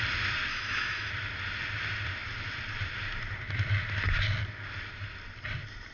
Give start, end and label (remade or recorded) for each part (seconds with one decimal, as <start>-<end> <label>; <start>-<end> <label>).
0.0-0.5 recorded; 0.5-1.1 remade; 1.1-5.9 recorded